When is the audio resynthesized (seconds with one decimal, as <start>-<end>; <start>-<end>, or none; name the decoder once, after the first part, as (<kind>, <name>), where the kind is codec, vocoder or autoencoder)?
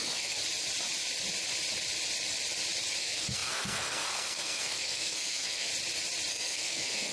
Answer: 0.0-0.4 (codec, SNAC); 3.0-5.7; 6.3-7.1